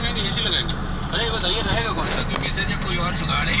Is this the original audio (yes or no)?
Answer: yes